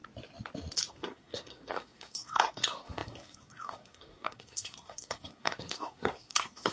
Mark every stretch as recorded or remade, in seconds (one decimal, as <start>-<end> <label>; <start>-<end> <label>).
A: 0.0-0.9 recorded; 0.9-6.7 remade